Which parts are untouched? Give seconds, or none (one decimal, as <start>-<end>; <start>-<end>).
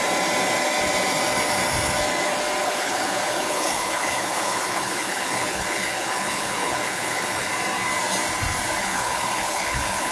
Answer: 0.0-2.6; 7.5-8.8